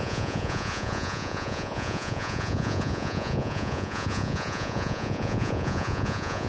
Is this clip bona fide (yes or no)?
no